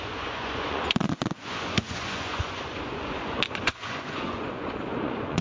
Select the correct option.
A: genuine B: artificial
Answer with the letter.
B